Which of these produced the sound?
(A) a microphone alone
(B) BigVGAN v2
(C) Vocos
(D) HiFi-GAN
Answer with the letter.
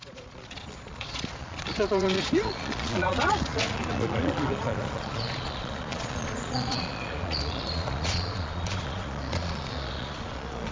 C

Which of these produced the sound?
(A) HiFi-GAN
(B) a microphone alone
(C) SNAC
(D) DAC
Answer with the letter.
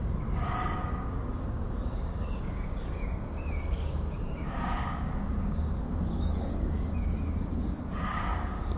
D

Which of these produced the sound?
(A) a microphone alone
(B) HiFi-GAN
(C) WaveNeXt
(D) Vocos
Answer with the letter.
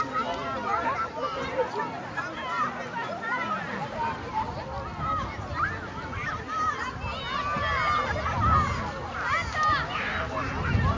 A